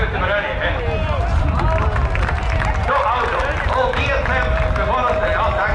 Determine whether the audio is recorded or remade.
recorded